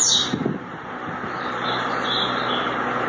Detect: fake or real real